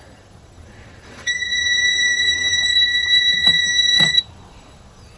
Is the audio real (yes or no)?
no